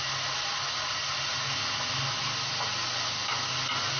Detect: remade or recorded recorded